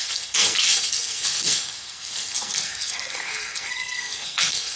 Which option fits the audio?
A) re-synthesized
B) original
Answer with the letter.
A